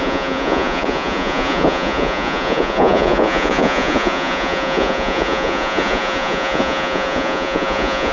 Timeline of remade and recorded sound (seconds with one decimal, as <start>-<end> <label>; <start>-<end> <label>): 0.0-8.1 remade